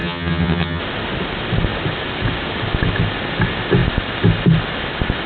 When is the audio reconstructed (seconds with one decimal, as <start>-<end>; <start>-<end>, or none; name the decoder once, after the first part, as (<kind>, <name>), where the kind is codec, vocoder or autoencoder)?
0.0-0.8 (vocoder, HiFi-GAN)

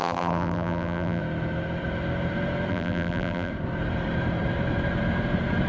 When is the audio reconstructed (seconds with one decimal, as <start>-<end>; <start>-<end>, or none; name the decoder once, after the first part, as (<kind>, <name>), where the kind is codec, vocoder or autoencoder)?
0.0-1.2 (vocoder, BigVGAN v2); 2.7-3.5

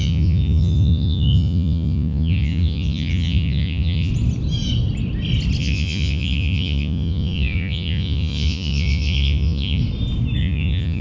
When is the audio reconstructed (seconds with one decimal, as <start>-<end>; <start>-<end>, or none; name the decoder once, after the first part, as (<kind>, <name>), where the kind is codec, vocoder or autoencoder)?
0.0-4.1 (vocoder, Vocos); 5.6-9.8; 10.4-11.0

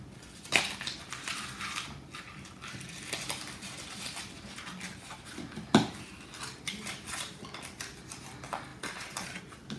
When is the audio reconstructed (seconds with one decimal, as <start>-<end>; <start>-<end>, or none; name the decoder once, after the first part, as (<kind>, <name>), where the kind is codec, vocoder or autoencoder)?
none

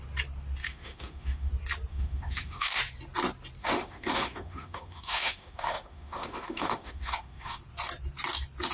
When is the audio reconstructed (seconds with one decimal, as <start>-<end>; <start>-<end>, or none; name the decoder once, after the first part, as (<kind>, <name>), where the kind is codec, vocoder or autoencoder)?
0.6-1.5 (autoencoder, DAC-VAE); 1.9-2.8; 3.6-7.6